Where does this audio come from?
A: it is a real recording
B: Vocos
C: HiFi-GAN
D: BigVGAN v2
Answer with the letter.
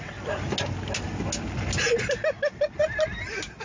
A